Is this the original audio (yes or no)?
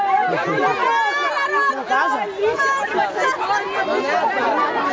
yes